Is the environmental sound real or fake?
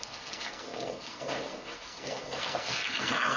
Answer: fake